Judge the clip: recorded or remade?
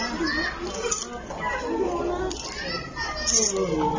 recorded